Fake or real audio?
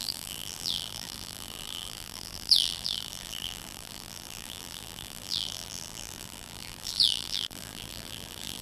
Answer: fake